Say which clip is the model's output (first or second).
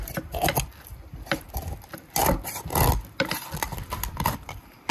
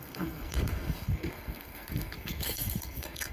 second